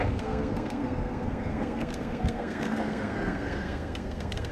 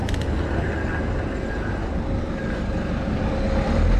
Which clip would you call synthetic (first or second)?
first